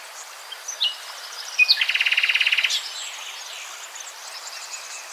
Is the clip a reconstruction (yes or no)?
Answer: no